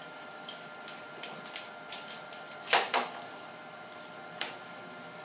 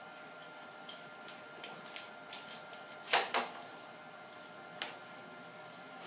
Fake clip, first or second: first